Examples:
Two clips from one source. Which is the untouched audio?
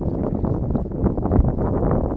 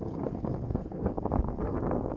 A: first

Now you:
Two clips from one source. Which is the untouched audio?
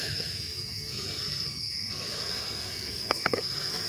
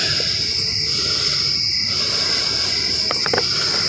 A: second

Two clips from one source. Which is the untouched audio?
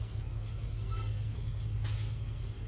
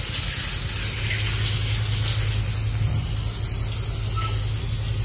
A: second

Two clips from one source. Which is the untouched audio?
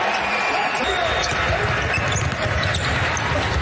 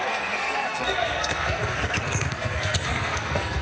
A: first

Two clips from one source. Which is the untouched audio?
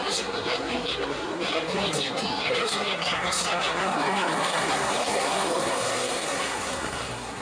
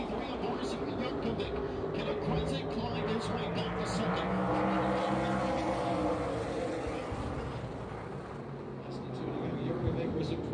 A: second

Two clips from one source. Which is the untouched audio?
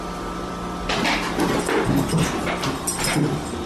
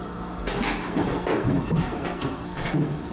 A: first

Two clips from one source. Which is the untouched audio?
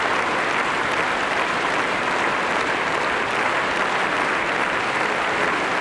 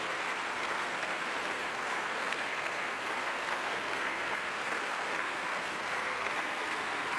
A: first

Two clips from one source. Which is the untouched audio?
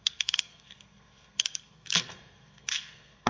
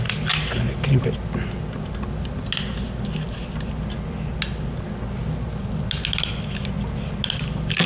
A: second